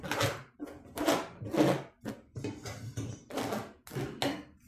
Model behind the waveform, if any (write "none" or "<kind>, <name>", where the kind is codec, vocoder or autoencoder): none